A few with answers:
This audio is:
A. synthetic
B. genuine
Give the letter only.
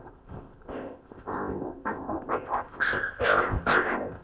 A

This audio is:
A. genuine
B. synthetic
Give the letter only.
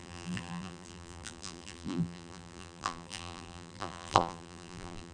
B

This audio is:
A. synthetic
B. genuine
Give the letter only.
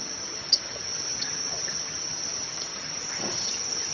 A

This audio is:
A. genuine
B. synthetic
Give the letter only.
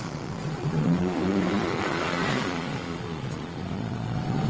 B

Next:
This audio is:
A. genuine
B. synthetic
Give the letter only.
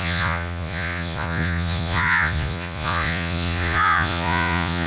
B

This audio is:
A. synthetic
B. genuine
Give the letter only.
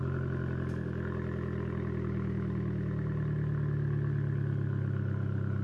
B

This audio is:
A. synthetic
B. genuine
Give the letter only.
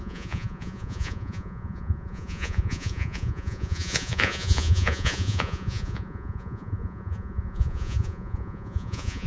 A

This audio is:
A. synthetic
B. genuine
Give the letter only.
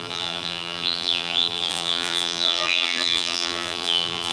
A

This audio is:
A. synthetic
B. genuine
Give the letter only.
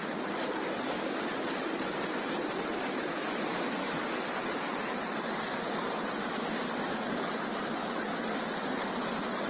B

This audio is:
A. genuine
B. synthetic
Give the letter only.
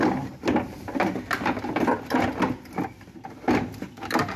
A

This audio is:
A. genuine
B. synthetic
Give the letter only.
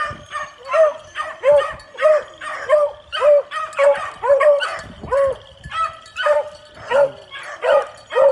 A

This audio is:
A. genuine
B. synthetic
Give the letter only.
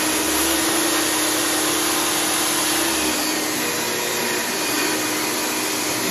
A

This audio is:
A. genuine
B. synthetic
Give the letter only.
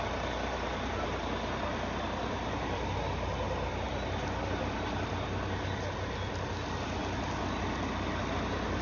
A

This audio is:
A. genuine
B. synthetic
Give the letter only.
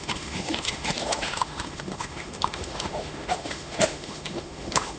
B